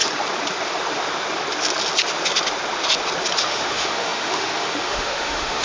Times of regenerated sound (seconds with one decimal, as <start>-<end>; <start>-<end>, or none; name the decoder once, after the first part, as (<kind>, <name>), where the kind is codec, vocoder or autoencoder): 3.4-5.6 (autoencoder, DAC-VAE)